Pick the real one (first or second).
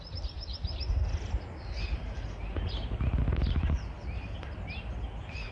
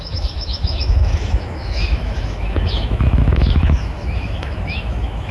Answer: first